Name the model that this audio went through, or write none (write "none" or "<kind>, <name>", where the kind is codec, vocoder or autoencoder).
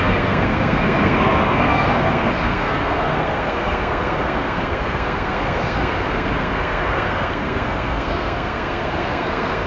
codec, SNAC